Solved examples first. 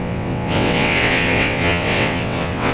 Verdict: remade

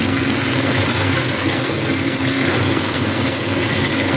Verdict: remade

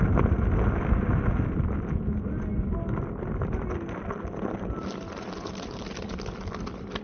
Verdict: recorded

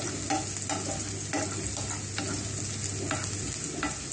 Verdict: recorded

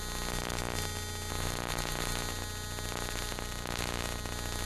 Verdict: recorded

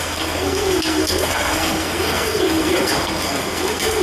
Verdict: remade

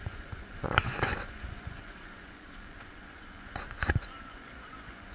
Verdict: remade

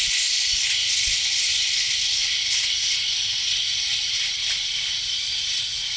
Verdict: recorded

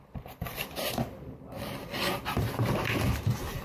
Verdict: recorded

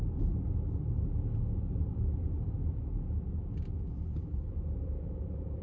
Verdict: recorded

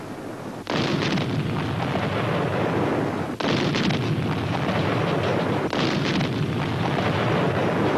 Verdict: recorded